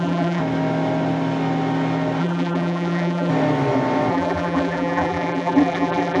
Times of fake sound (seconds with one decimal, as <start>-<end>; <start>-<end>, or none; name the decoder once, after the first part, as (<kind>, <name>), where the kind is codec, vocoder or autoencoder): 0.0-0.4 (vocoder, BigVGAN v2); 2.2-3.3; 4.1-6.2

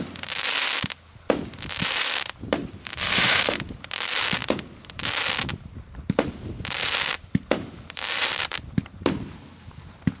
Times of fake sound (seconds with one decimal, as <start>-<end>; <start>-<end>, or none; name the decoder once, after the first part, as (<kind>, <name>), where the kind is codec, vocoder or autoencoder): 2.8-3.6 (autoencoder, DAC-VAE)

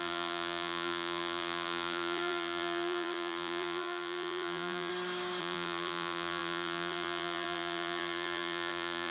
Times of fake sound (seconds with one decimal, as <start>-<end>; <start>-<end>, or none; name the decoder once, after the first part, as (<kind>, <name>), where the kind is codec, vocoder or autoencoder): 0.0-4.9 (vocoder, BigVGAN v2); 5.4-9.1

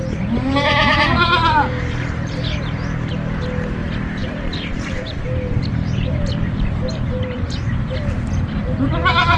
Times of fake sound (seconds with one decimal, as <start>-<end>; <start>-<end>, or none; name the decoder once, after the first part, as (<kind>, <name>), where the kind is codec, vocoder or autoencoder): 4.2-7.4 (vocoder, BigVGAN v2)

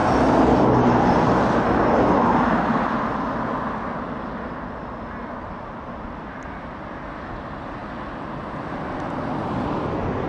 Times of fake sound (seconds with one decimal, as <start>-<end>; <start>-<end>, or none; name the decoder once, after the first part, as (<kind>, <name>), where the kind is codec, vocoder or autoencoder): none